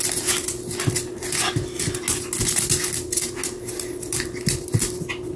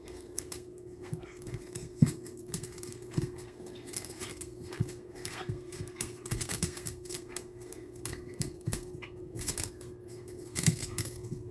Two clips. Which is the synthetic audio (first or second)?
second